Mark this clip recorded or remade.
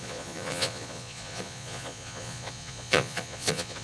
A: remade